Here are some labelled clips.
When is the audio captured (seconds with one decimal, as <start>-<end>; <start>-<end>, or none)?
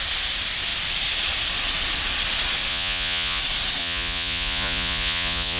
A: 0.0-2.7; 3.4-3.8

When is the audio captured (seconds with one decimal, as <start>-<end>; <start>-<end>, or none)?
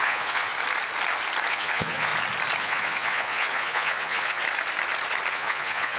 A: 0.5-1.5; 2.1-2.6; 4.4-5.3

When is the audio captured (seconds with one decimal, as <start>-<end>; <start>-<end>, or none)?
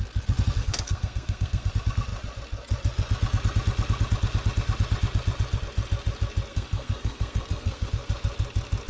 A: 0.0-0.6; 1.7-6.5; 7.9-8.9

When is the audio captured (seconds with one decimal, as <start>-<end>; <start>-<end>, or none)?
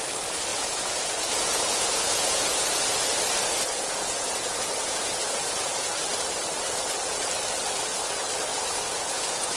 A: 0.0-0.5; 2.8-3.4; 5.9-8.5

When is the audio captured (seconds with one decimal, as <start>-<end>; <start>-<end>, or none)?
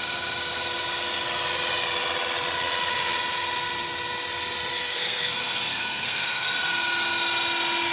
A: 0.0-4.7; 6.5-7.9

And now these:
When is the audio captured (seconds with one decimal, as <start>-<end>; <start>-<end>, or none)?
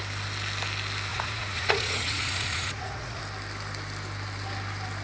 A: 0.0-1.1; 3.2-5.0